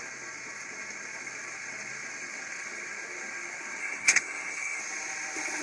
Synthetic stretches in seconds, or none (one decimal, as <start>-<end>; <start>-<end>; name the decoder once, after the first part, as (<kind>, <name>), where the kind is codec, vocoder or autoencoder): 3.8-4.8 (codec, SNAC)